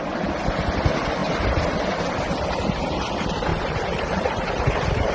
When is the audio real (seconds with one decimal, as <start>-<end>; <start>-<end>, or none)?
0.0-3.5